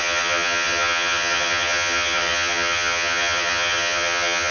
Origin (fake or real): fake